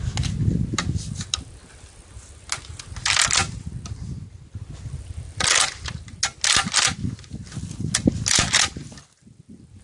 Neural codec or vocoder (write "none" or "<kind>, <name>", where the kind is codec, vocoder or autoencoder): none